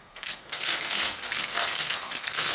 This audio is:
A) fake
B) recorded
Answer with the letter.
A